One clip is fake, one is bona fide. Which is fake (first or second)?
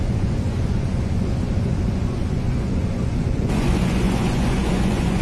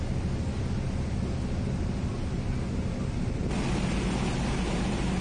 first